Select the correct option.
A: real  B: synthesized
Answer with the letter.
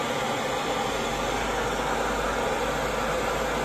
A